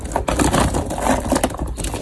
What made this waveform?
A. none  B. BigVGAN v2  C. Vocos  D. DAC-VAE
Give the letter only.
A